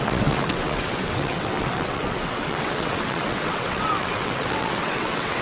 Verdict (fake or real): fake